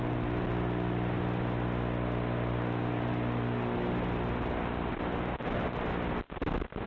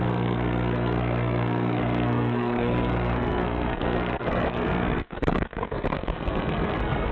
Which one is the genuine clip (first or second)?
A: first